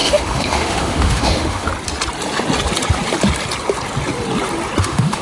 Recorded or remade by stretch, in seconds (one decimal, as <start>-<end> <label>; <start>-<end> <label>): 0.0-1.7 remade; 1.7-4.8 recorded; 4.8-5.2 remade